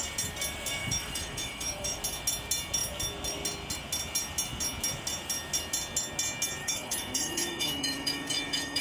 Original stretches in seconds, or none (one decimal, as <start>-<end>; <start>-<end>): 0.0-0.8; 2.0-6.6